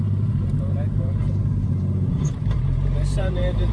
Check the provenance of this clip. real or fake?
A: fake